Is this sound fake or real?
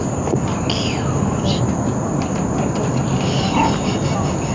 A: real